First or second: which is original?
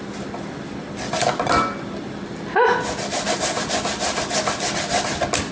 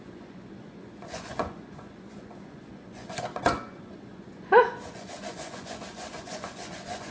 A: first